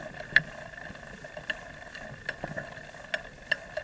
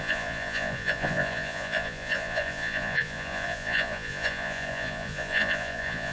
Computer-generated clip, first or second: second